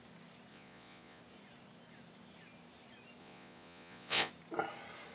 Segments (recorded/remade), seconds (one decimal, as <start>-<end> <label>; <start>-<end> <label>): 0.0-0.5 recorded; 0.5-1.2 remade; 1.2-3.2 recorded; 3.2-4.3 remade; 4.3-5.1 recorded